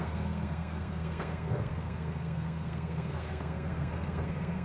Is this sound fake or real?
fake